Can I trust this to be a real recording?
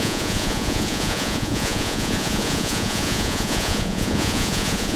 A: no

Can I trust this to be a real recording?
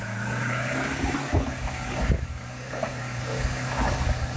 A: no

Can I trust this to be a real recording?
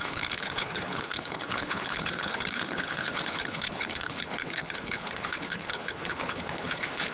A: no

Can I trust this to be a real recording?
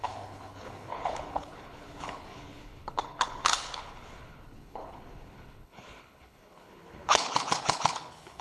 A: no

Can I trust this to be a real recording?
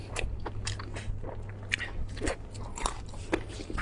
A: yes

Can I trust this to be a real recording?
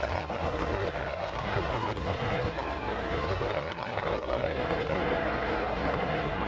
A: no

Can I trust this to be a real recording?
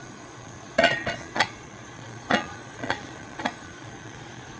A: no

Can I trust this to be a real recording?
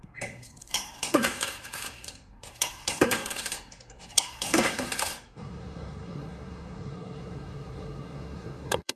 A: no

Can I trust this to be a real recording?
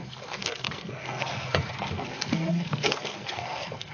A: no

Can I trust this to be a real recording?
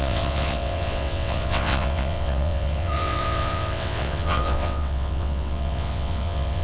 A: no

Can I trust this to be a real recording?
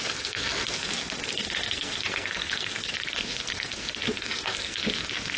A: no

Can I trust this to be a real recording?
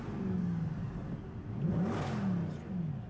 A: yes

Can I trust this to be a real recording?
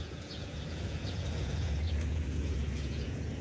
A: no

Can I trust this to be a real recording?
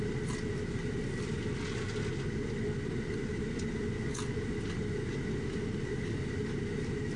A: yes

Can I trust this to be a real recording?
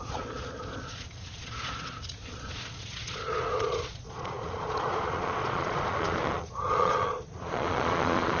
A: no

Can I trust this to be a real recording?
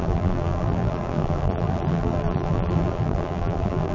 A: no